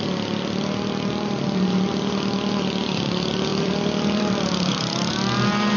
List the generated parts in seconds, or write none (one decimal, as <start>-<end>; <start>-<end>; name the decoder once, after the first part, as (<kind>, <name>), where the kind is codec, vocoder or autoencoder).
3.5-5.1 (vocoder, BigVGAN v2)